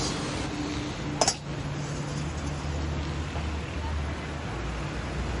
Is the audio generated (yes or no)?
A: no